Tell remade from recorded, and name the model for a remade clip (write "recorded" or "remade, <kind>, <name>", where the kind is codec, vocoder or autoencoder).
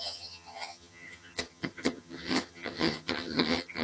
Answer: remade, vocoder, HiFi-GAN